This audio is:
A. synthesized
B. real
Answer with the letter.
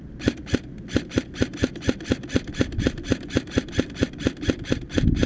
B